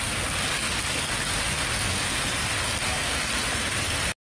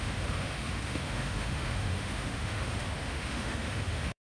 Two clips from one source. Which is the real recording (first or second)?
first